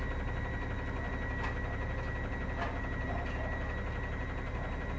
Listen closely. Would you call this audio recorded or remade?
recorded